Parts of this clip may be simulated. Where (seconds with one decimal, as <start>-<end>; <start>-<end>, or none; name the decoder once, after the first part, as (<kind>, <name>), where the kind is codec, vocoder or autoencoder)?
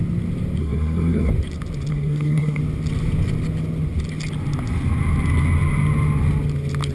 0.6-1.3 (codec, SNAC); 1.9-2.6